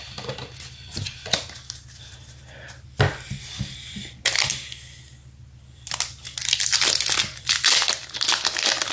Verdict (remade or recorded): recorded